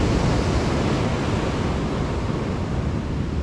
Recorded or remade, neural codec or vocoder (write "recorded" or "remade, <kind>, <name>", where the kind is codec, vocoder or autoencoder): recorded